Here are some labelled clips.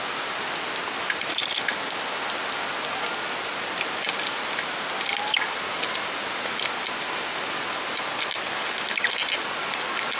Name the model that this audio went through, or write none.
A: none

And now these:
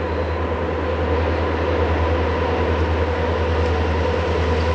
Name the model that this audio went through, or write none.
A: none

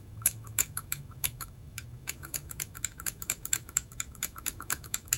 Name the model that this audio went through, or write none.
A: autoencoder, DAC-VAE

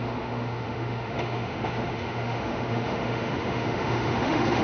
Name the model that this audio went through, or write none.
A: autoencoder, DAC-VAE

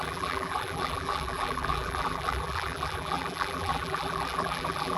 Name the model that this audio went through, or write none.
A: vocoder, BigVGAN v2